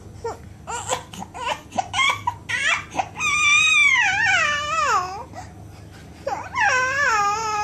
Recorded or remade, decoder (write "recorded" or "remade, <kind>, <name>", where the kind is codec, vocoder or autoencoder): recorded